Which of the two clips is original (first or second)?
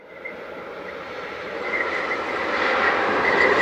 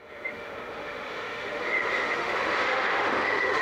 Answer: first